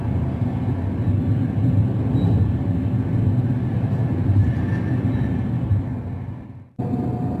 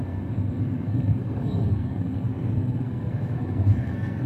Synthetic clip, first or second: second